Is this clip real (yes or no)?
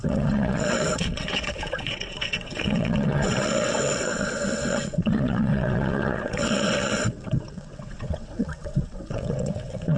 no